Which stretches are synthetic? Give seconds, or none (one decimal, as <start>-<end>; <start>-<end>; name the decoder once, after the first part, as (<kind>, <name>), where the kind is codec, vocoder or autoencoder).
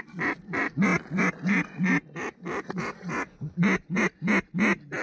none